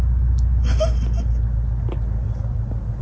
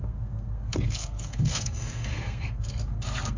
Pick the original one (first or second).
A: first